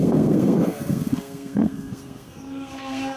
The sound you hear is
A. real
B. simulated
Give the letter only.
B